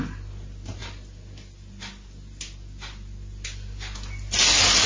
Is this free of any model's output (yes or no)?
yes